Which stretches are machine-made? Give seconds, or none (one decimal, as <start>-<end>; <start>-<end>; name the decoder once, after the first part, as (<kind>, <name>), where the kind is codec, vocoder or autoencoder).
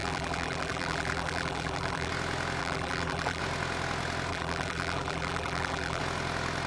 0.0-2.1 (vocoder, BigVGAN v2); 2.6-3.4; 4.3-6.0